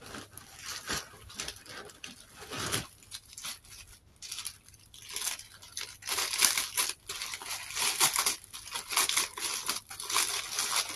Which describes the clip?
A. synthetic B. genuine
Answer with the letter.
B